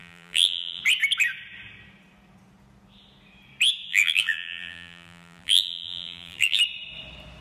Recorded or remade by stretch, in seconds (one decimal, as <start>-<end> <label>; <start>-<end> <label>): 0.0-0.8 remade; 0.8-3.9 recorded; 3.9-6.6 remade; 6.6-7.4 recorded